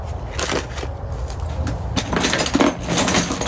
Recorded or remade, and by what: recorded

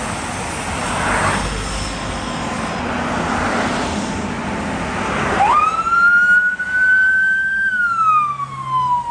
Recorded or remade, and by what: recorded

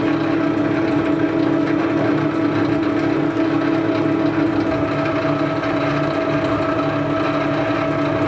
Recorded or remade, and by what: recorded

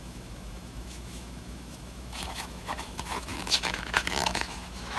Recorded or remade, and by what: remade, autoencoder, DAC-VAE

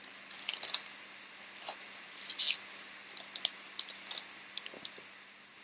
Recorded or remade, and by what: recorded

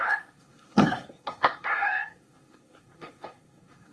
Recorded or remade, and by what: remade, codec, SNAC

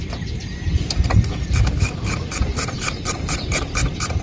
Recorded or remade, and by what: remade, vocoder, BigVGAN v2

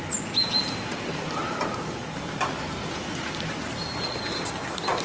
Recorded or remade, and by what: recorded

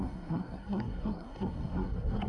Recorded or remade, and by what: remade, codec, SNAC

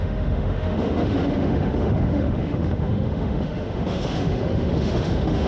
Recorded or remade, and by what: remade, autoencoder, DAC-VAE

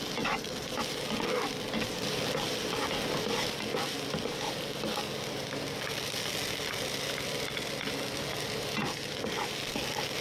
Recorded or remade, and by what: recorded